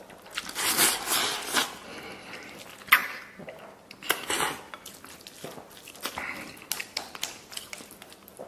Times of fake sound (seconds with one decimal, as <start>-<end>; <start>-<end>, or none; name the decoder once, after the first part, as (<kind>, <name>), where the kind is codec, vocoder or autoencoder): none